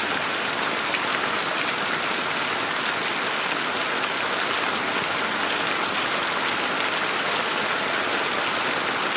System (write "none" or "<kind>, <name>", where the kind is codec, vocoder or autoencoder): none